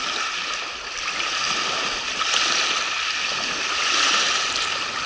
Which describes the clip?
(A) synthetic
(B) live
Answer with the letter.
B